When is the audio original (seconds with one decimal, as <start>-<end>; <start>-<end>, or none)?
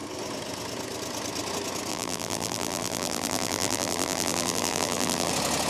0.0-1.9; 5.3-5.7